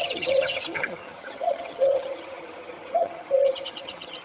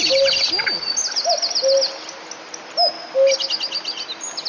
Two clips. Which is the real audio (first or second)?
second